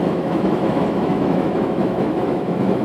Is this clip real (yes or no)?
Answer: no